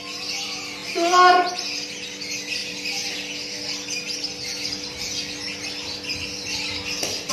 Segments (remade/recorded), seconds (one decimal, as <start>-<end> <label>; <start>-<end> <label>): 0.0-7.3 recorded